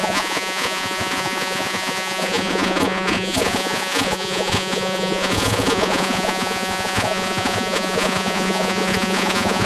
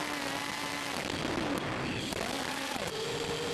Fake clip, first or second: first